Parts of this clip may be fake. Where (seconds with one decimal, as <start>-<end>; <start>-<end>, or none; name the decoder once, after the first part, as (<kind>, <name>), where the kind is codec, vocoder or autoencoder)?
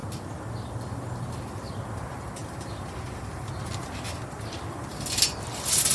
2.4-3.5 (vocoder, BigVGAN v2)